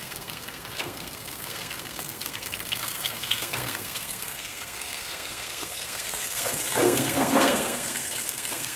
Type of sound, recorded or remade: remade